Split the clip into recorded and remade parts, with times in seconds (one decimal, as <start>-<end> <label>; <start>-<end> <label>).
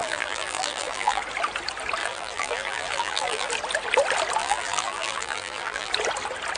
0.0-1.2 remade; 1.2-2.0 recorded; 2.0-3.5 remade; 3.5-4.4 recorded; 4.4-5.9 remade; 5.9-6.6 recorded